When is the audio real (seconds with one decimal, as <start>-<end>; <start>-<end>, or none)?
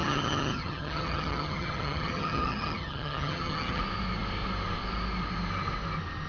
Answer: 3.8-6.3